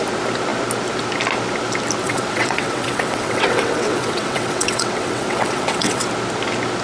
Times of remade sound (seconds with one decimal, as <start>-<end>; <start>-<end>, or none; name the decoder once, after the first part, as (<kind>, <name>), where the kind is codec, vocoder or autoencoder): 2.0-6.1 (vocoder, WaveNeXt)